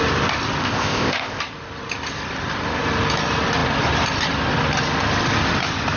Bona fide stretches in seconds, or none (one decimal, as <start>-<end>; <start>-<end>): 0.0-0.6; 1.4-6.0